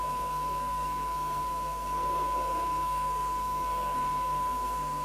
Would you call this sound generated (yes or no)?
yes